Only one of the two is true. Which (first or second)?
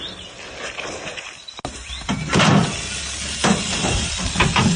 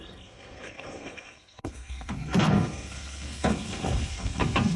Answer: first